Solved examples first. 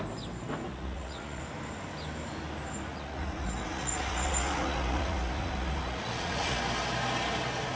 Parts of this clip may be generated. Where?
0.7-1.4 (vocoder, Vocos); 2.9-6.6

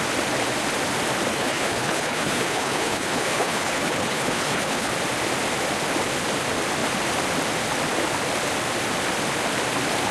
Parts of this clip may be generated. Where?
1.3-4.9 (codec, HILCodec)

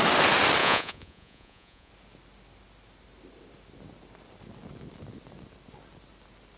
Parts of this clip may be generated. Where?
0.6-1.9 (vocoder, Vocos)

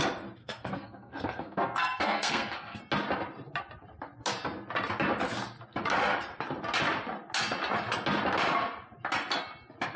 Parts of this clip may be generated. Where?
0.4-2.8 (codec, SNAC)